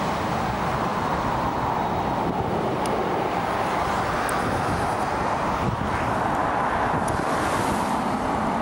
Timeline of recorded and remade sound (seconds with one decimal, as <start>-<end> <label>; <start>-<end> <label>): 0.0-0.9 recorded; 0.9-2.8 remade; 2.8-6.4 recorded; 6.4-8.6 remade